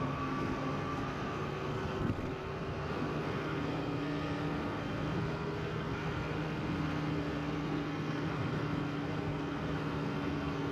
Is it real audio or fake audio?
fake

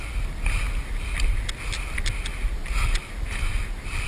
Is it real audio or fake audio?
real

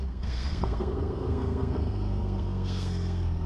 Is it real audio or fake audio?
fake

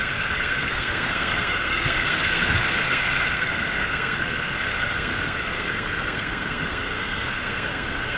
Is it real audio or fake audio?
fake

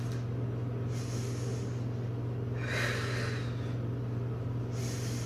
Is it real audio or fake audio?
real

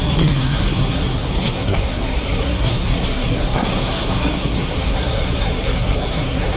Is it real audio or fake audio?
fake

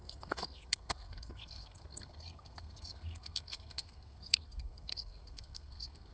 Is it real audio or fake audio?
fake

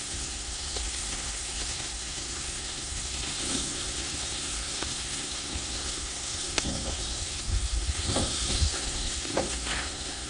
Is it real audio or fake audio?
fake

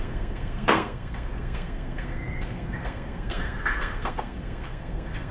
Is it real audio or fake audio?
fake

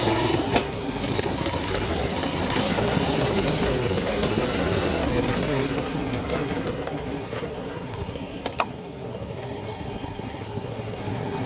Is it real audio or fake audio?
fake